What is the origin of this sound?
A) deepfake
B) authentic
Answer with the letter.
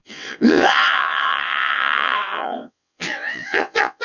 A